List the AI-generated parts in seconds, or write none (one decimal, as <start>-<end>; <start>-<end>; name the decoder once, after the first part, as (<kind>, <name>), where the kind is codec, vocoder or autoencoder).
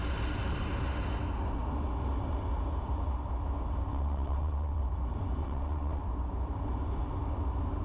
3.9-4.8 (vocoder, WaveNeXt); 5.4-6.0